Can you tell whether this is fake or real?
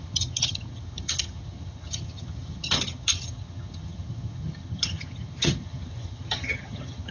fake